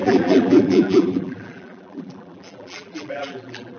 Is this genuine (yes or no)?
no